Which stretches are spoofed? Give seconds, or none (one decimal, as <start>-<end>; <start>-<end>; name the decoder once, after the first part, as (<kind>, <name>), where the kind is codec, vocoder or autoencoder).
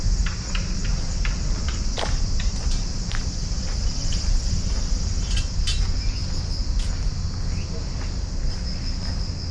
0.8-4.5 (vocoder, BigVGAN v2)